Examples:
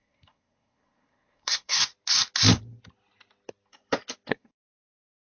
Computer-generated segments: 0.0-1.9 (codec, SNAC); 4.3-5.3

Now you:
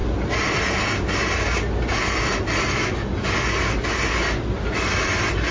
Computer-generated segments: none

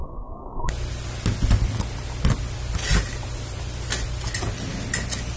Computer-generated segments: 0.0-0.7 (codec, SNAC)

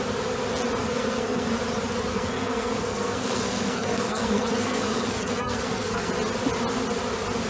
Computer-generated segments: 0.8-1.5 (codec, SNAC); 2.1-6.1

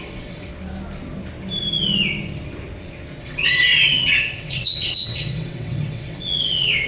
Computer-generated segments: 0.0-0.5 (vocoder, WaveNeXt); 3.2-6.9

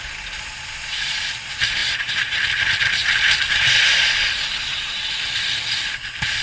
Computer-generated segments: 1.8-2.4 (vocoder, Vocos)